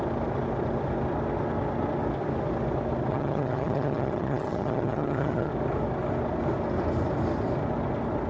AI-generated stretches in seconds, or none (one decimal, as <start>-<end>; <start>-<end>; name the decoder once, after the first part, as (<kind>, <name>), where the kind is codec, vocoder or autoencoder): 3.1-5.5 (vocoder, HiFi-GAN)